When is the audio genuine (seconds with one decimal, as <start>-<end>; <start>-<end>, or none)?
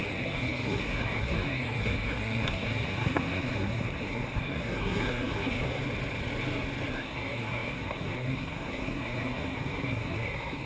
5.8-6.9